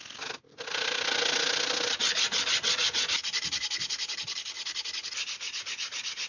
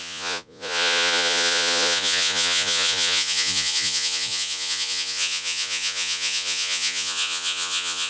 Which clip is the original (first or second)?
first